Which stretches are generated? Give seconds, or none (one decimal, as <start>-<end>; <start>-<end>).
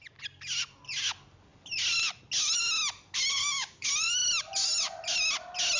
3.4-3.9